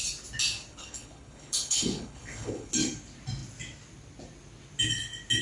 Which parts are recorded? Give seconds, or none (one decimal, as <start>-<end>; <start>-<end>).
0.0-0.7; 2.7-5.4